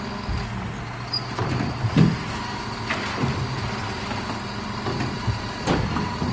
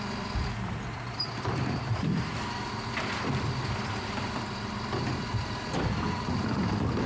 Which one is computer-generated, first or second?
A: second